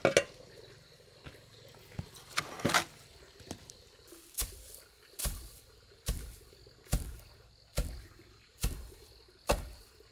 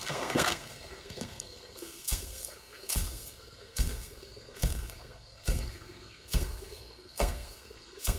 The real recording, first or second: first